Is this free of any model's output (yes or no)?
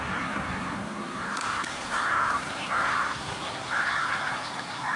no